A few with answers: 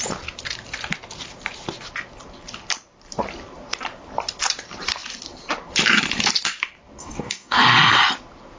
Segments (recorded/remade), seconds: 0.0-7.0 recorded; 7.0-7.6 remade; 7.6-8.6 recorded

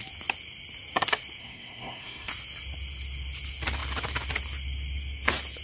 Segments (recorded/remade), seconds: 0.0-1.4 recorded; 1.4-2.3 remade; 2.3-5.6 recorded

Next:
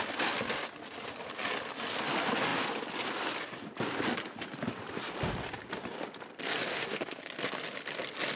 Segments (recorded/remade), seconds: 0.0-6.7 recorded; 6.7-7.2 remade; 7.2-8.4 recorded

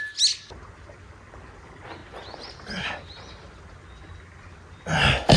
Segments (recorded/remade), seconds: 0.0-5.4 recorded

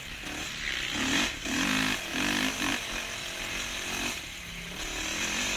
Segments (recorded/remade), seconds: 0.0-2.1 recorded; 2.1-2.7 remade; 2.7-3.2 recorded; 3.2-4.2 remade; 4.2-5.1 recorded; 5.1-5.6 remade

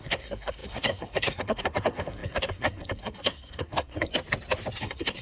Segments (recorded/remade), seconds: 0.0-4.1 remade; 4.1-4.8 recorded; 4.8-5.2 remade

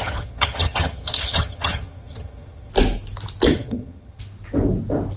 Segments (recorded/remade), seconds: 0.0-2.7 remade; 2.7-3.5 recorded; 3.5-4.2 remade; 4.2-5.2 recorded